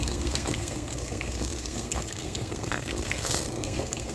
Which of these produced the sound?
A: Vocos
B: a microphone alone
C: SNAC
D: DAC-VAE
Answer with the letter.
C